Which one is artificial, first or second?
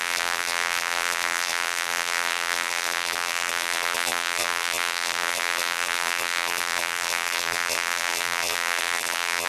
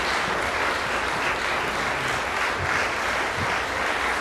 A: first